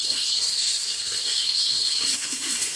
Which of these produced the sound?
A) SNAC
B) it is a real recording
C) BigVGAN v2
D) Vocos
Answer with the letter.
A